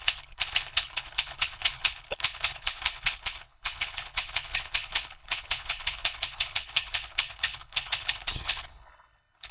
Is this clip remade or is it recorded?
remade